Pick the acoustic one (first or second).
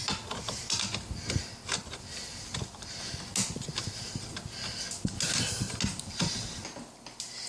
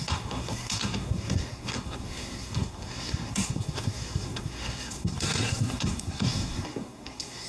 first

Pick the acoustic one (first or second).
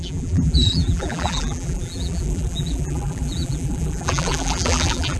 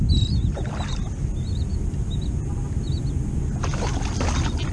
second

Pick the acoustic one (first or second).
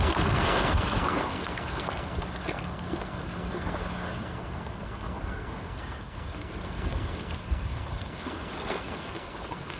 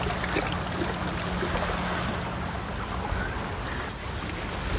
second